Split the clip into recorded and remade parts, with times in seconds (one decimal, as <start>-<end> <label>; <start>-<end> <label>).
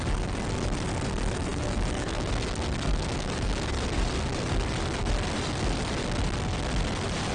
0.0-1.5 recorded; 1.5-2.3 remade; 2.3-2.9 recorded; 2.9-3.7 remade; 3.7-7.3 recorded